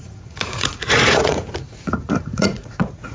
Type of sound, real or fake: fake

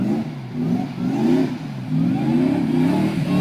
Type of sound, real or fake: real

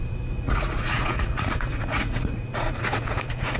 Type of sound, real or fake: fake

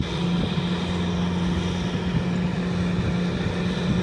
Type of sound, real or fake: real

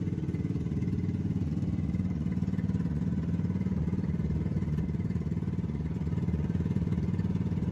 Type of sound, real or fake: fake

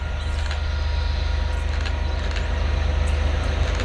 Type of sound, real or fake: real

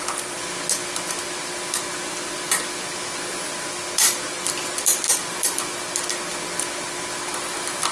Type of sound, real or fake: real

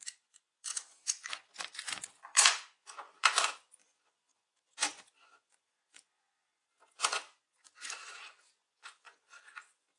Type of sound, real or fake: fake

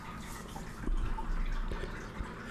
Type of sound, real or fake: real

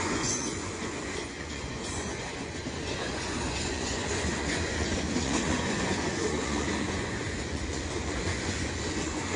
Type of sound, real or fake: fake